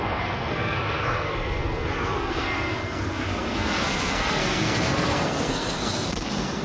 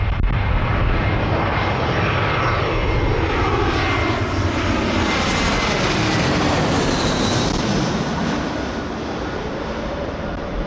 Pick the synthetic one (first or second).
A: first